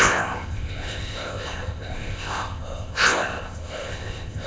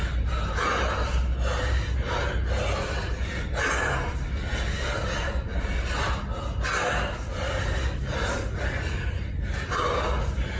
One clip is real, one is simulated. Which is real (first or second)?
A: second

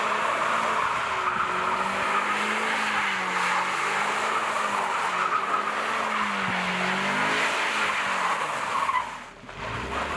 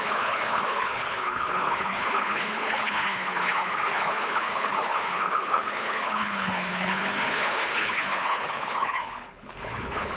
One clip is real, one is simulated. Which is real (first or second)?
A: first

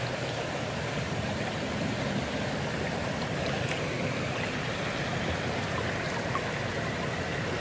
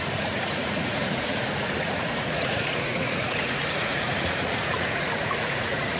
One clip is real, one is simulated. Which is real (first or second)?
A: first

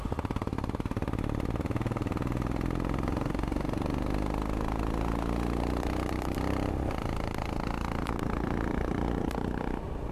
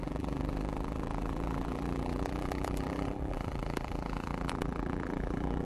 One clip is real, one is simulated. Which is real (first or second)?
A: first